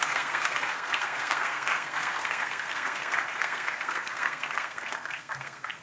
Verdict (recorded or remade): remade